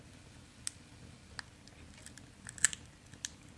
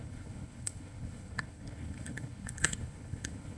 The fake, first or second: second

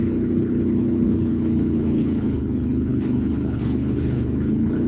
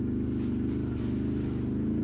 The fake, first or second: first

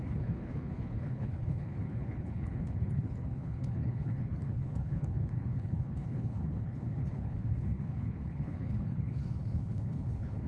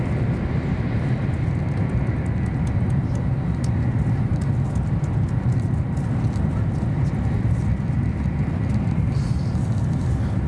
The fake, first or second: first